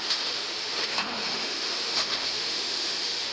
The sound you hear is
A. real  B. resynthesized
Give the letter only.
B